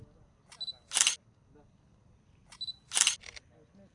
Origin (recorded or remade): recorded